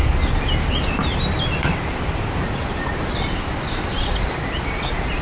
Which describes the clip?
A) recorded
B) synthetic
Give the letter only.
A